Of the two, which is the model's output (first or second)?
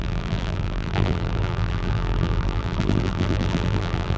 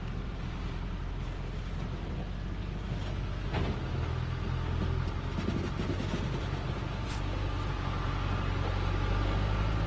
first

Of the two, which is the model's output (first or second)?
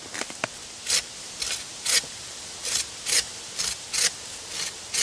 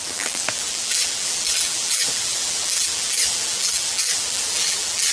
second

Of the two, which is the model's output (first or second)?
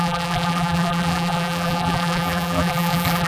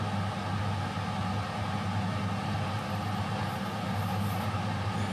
first